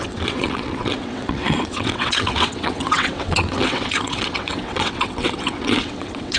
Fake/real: fake